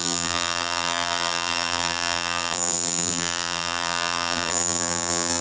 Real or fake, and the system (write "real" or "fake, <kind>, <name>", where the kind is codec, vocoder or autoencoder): fake, vocoder, BigVGAN v2